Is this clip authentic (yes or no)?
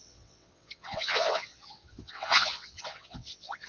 no